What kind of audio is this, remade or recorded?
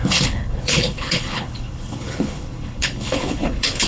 remade